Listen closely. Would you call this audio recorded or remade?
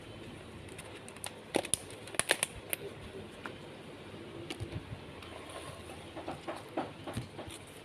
recorded